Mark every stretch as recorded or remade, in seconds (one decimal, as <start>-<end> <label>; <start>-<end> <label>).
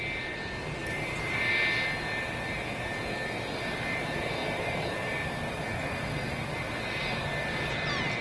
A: 0.0-0.8 recorded; 0.8-1.5 remade; 1.5-4.4 recorded; 4.4-7.0 remade; 7.0-8.2 recorded